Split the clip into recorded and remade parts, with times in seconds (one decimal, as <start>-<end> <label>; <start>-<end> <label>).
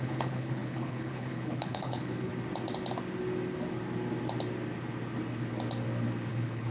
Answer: 0.0-2.3 remade; 2.3-6.3 recorded; 6.3-6.7 remade